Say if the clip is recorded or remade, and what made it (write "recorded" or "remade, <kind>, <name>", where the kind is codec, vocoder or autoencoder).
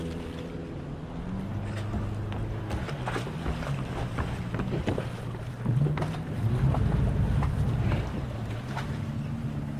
recorded